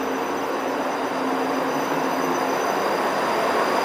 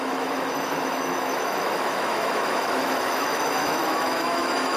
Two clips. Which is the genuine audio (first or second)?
first